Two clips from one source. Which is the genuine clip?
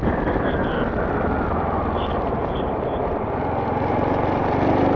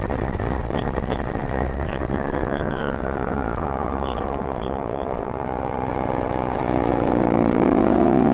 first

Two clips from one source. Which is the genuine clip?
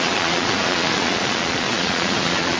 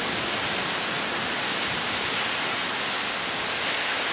second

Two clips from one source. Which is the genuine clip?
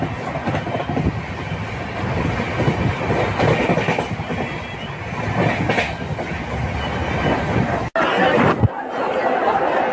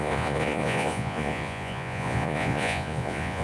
first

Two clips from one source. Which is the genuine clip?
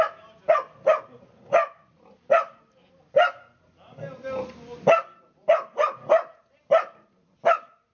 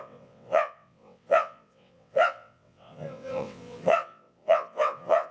first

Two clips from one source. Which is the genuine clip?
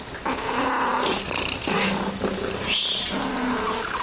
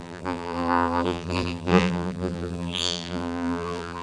first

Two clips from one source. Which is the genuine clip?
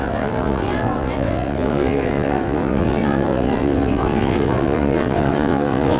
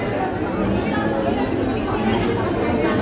second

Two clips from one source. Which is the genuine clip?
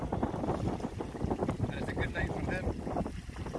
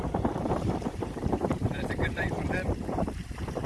first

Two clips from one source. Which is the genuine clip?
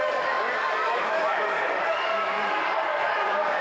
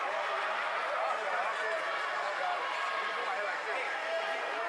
second